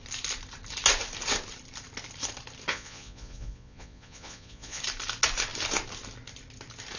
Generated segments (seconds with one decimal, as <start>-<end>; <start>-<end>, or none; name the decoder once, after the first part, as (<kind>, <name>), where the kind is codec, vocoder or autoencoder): 2.7-4.8 (vocoder, Vocos)